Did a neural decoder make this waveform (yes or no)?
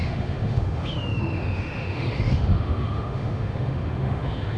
yes